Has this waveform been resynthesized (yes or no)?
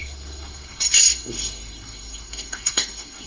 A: yes